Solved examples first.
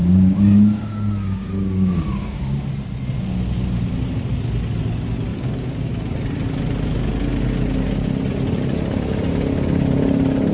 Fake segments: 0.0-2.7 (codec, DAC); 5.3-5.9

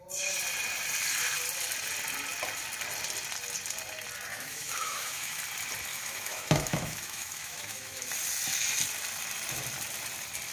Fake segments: 4.3-5.4 (autoencoder, DAC-VAE); 5.9-8.0

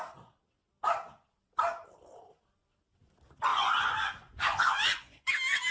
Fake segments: 3.5-5.3 (vocoder, Vocos)

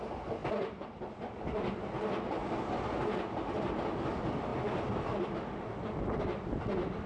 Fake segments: none

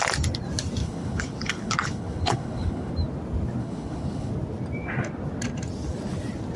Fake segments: 0.8-2.9 (codec, HILCodec); 3.6-4.3

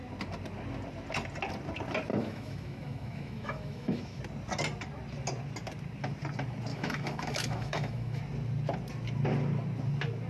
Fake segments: 2.1-4.2 (autoencoder, DAC-VAE); 6.7-8.2

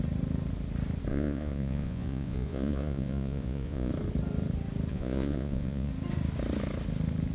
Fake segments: 1.1-3.9 (vocoder, Vocos); 4.9-5.9